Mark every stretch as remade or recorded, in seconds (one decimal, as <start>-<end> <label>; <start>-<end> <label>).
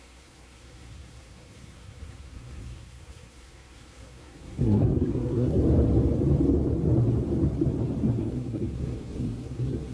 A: 0.0-5.6 remade; 5.6-8.2 recorded; 8.2-9.9 remade